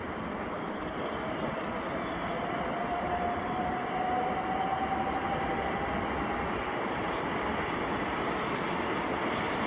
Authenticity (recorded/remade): recorded